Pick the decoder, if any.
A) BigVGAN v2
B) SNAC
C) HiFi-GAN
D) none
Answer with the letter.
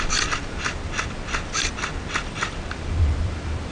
D